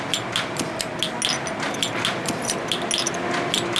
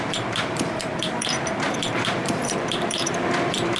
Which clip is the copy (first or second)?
second